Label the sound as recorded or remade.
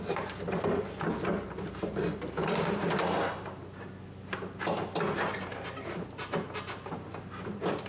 recorded